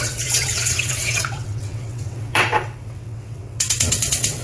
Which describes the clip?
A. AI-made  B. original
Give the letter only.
A